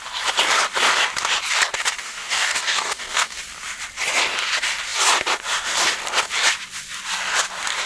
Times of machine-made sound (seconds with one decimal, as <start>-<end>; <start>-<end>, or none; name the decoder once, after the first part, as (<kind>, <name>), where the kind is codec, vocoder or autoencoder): 2.0-3.4 (codec, DAC)